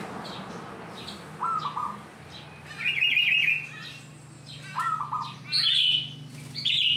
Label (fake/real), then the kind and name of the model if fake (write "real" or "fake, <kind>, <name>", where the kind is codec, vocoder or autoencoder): real